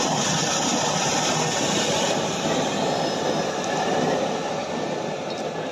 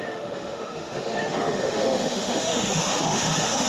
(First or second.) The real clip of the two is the first